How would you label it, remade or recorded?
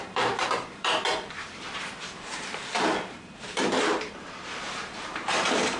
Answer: remade